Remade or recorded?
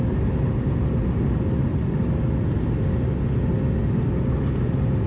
recorded